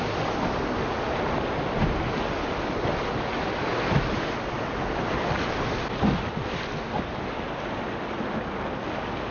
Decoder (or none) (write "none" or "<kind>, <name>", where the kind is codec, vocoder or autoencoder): none